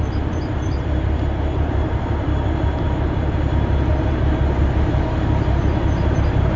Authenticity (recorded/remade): remade